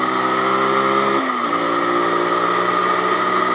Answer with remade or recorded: recorded